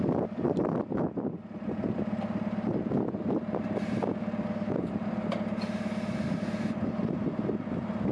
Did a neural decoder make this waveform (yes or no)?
no